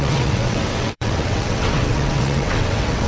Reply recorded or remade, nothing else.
remade